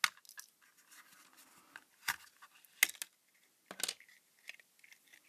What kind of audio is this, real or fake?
real